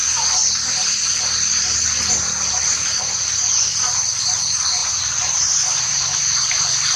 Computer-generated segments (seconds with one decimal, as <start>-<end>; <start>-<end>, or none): 4.2-7.0